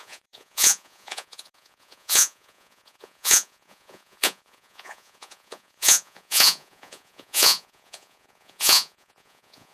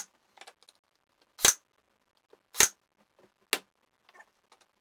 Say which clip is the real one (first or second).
second